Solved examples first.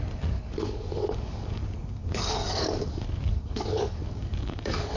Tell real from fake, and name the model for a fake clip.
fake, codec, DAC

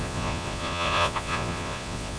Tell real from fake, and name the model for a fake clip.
fake, vocoder, Vocos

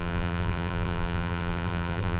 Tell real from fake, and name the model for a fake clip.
fake, vocoder, BigVGAN v2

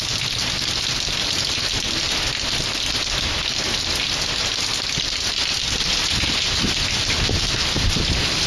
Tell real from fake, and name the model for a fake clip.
real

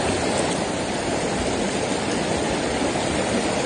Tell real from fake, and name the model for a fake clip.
real